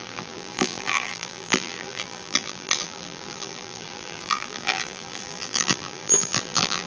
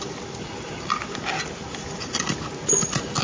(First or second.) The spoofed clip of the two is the first